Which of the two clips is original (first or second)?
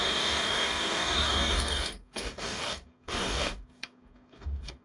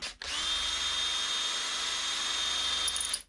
second